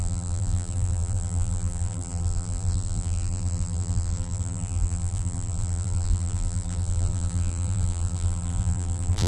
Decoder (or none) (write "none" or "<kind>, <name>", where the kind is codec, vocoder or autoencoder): vocoder, BigVGAN v2